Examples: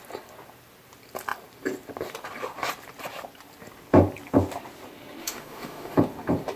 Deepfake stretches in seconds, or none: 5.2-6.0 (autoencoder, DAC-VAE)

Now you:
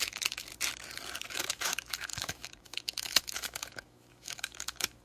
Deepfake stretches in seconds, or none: 0.0-0.5 (autoencoder, DAC-VAE); 1.3-5.0

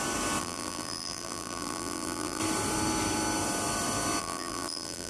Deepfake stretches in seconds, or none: 0.4-2.4 (vocoder, BigVGAN v2); 4.2-5.1

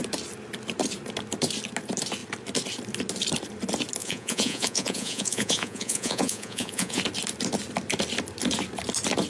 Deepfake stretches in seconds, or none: 4.0-7.0 (vocoder, Vocos)